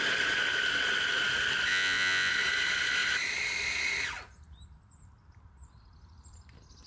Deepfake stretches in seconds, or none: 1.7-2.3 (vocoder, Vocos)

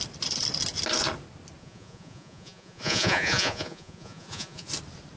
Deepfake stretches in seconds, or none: 1.6-4.7 (vocoder, Vocos)

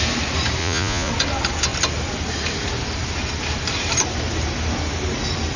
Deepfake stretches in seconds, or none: 0.6-1.1 (vocoder, Vocos)

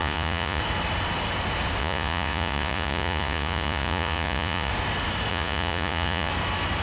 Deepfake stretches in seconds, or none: 0.0-0.6 (vocoder, Vocos); 1.8-4.7; 5.3-6.3